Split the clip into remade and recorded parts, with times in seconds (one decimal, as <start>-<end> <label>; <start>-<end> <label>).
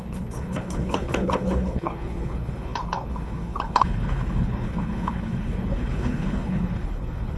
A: 0.0-7.4 remade